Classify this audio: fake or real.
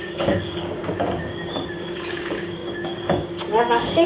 fake